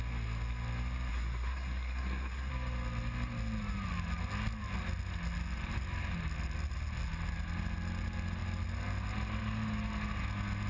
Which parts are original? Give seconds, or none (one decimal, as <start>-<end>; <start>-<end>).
0.0-1.1; 2.5-10.7